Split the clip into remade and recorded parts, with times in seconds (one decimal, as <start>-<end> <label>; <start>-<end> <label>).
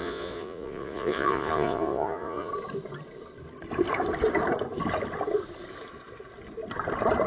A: 0.0-2.5 remade; 2.5-7.3 recorded